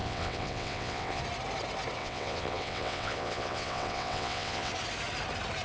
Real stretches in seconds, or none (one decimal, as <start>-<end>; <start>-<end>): 1.2-2.0; 4.7-5.6